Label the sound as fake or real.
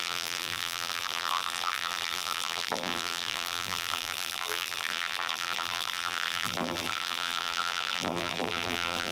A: fake